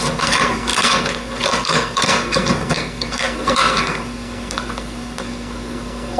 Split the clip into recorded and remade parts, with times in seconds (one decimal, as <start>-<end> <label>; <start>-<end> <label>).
0.0-6.2 remade